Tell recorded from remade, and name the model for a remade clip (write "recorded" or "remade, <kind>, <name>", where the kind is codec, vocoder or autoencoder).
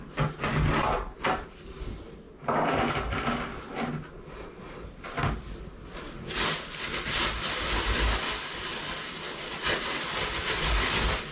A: recorded